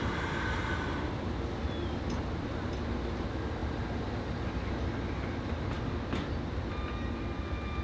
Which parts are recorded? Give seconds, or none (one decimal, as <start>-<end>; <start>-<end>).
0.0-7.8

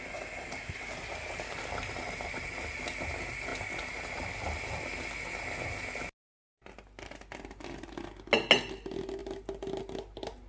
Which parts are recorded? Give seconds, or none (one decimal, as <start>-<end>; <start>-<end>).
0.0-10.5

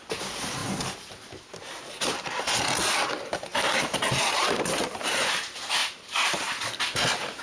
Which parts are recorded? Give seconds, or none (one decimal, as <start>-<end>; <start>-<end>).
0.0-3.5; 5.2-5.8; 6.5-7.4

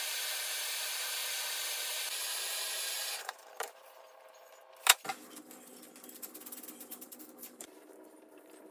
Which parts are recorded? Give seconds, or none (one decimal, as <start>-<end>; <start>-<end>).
1.2-1.8; 4.6-6.8

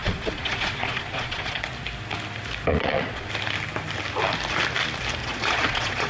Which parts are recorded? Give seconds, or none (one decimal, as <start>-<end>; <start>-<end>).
1.7-2.7; 3.3-5.2